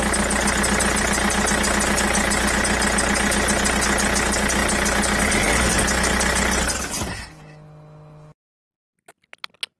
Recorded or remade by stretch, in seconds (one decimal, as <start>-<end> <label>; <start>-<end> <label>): 0.0-9.8 recorded